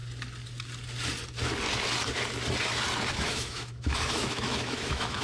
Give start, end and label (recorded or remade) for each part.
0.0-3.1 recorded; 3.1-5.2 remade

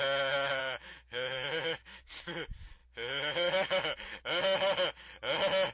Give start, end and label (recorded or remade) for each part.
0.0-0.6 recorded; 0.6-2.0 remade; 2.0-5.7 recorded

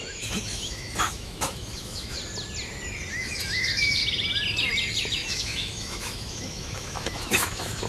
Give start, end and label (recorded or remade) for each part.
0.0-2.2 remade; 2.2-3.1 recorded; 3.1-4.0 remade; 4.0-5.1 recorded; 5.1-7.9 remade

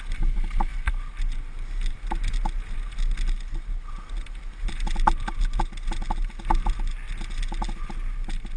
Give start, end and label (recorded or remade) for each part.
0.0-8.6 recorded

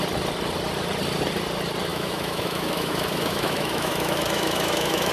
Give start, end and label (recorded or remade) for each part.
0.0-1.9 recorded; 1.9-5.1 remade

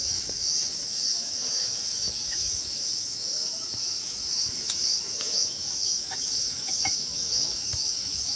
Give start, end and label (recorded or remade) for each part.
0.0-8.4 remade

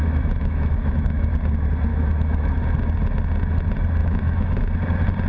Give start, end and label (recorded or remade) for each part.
0.0-1.3 remade; 1.3-1.9 recorded; 1.9-2.5 remade; 2.5-4.0 recorded; 4.0-4.6 remade; 4.6-5.3 recorded